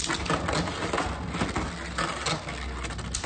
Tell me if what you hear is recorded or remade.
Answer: recorded